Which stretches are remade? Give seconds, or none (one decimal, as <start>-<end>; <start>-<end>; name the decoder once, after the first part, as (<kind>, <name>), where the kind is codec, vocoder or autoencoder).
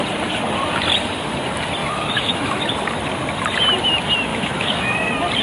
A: 1.8-2.7 (autoencoder, DAC-VAE); 4.3-4.9